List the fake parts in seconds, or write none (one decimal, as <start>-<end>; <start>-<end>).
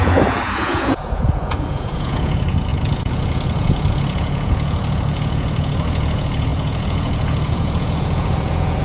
0.0-8.8